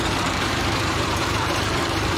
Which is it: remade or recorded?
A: remade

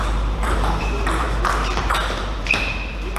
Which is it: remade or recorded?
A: remade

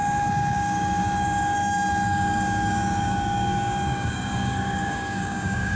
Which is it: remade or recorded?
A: remade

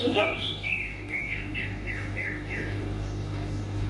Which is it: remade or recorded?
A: remade